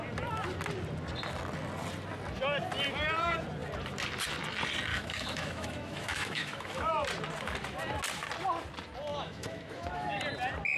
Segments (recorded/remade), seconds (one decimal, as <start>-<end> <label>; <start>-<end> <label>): 0.0-4.9 recorded; 4.9-6.9 remade; 6.9-9.1 recorded; 9.1-10.2 remade; 10.2-10.8 recorded